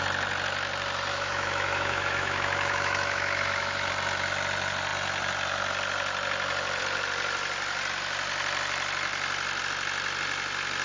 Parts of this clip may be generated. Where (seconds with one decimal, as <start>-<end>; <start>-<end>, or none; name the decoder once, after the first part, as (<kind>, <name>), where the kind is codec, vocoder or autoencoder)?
1.1-3.9 (autoencoder, DAC-VAE)